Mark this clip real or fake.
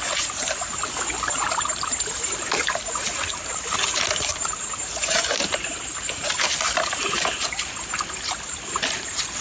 real